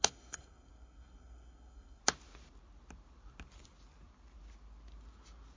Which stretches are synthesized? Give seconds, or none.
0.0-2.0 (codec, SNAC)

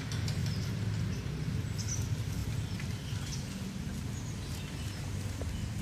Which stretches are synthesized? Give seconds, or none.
none